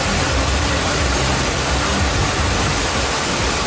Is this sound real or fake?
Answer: real